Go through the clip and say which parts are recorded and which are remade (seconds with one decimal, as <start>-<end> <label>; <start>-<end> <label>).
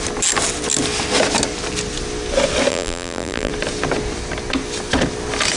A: 0.0-2.7 recorded; 2.7-3.5 remade; 3.5-5.6 recorded